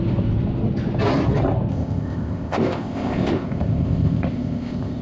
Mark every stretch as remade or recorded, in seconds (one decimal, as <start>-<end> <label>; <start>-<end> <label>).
0.0-1.7 recorded; 1.7-5.0 remade

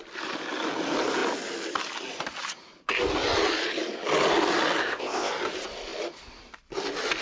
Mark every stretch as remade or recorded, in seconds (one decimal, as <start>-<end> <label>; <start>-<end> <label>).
0.0-4.8 recorded; 4.8-5.3 remade; 5.3-7.2 recorded

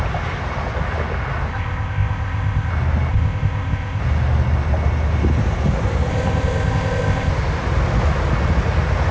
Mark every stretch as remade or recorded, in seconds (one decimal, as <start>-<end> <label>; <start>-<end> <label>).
0.0-1.5 recorded; 1.5-2.7 remade; 2.7-3.1 recorded; 3.1-4.0 remade; 4.0-6.1 recorded; 6.1-7.3 remade; 7.3-9.1 recorded